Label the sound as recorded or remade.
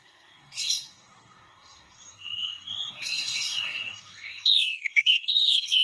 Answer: remade